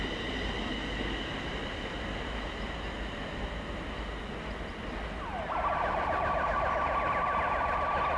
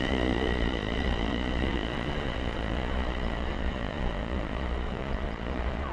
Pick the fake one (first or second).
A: second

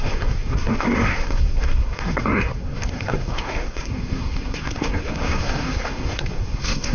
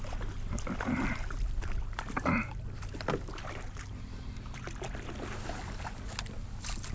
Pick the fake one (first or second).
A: first